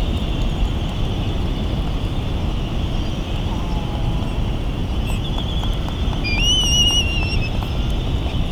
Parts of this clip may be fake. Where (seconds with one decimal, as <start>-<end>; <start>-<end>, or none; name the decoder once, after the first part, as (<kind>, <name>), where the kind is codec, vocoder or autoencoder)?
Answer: 4.8-5.4 (vocoder, Vocos)